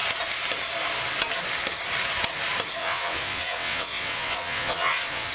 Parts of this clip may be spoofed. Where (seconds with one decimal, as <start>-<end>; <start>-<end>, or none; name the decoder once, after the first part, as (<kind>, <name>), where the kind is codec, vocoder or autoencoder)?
2.8-5.3 (vocoder, WaveNeXt)